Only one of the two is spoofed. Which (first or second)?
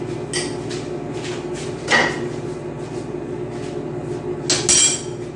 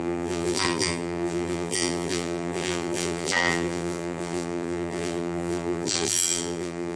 second